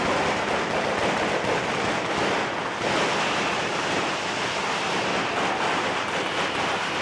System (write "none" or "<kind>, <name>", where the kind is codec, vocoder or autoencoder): none